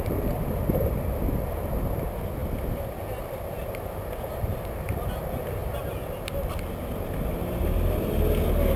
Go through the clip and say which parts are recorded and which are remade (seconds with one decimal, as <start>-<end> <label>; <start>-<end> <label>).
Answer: 0.0-8.8 recorded